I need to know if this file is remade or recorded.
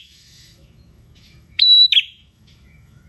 remade